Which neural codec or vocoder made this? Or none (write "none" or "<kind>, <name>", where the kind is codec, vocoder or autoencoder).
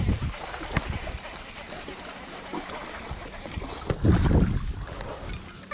none